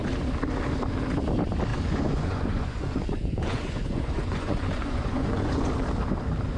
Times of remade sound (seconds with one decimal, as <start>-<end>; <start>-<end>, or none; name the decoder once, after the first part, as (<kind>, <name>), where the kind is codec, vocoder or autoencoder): 1.7-5.7 (vocoder, Vocos)